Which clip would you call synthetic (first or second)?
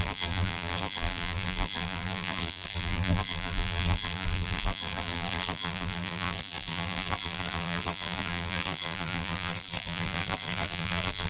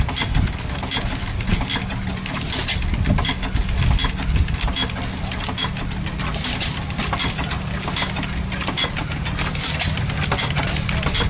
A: first